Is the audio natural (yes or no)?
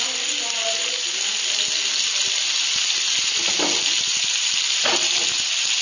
yes